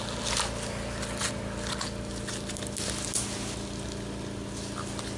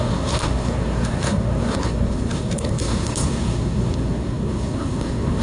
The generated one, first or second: second